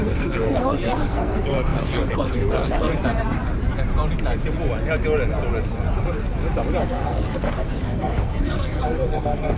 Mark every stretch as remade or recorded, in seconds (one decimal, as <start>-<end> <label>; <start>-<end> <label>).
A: 0.0-2.9 remade; 2.9-6.8 recorded; 6.8-9.6 remade